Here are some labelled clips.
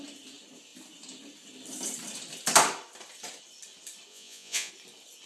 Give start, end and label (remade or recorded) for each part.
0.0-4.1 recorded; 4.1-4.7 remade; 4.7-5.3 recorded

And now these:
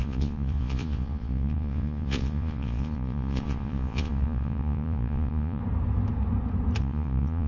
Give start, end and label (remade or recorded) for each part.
0.0-5.6 remade; 5.6-6.8 recorded; 6.8-7.5 remade

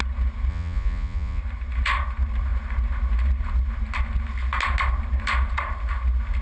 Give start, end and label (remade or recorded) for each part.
0.0-0.5 recorded; 0.5-1.4 remade; 1.4-6.4 recorded

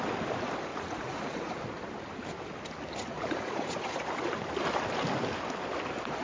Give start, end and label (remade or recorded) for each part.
0.0-0.7 recorded; 0.7-1.6 remade; 1.6-3.0 recorded; 3.0-4.0 remade; 4.0-6.2 recorded

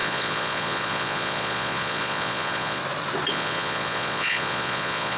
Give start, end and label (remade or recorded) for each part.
0.0-2.8 remade; 2.8-3.3 recorded; 3.3-5.2 remade

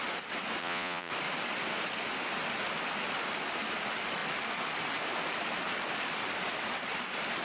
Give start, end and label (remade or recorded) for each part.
0.0-0.6 recorded; 0.6-1.1 remade; 1.1-7.4 recorded

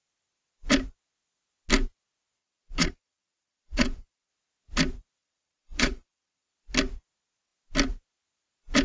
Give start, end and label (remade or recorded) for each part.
0.0-2.4 recorded; 2.4-4.3 remade; 4.3-5.2 recorded; 5.2-6.5 remade; 6.5-8.8 recorded